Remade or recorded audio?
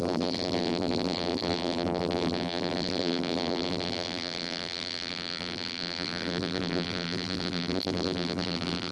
remade